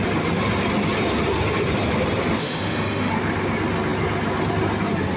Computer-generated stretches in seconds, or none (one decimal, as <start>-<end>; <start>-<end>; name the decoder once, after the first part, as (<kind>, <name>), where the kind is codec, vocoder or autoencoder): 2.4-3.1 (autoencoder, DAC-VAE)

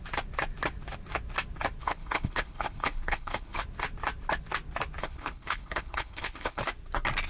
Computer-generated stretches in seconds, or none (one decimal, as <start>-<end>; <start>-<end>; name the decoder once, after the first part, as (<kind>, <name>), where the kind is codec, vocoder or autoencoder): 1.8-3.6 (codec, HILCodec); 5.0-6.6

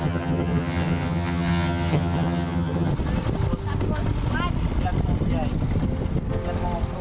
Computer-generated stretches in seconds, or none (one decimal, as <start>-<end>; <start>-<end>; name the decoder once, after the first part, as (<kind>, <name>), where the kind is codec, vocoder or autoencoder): 0.0-2.9 (vocoder, HiFi-GAN)

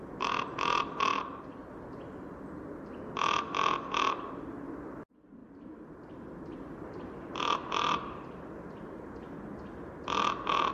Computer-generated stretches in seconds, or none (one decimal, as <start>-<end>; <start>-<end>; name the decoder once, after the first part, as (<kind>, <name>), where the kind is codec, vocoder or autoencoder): 1.1-1.7 (vocoder, BigVGAN v2); 5.4-7.3

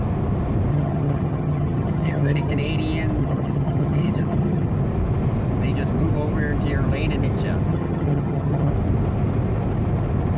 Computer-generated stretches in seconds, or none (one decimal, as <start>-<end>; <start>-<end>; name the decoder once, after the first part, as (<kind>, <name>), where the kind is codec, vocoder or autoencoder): 0.7-2.5 (vocoder, HiFi-GAN); 3.2-4.7; 7.7-8.7